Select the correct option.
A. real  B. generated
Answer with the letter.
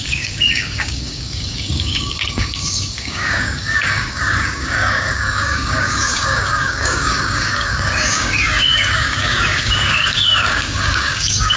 B